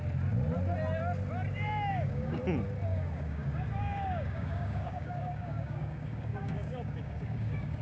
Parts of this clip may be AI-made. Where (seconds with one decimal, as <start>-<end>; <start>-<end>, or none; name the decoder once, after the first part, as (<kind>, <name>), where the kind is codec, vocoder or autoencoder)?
1.9-2.4 (codec, DAC); 2.9-7.8